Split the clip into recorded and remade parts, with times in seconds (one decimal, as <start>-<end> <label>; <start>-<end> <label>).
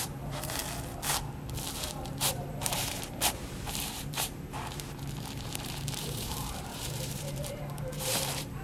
0.0-0.6 remade; 0.6-1.7 recorded; 1.7-8.6 remade